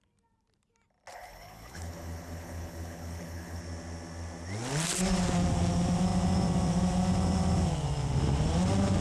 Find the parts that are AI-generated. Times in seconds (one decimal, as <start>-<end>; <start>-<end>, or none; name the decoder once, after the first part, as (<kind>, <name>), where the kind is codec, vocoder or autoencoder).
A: 1.1-3.6 (codec, HILCodec)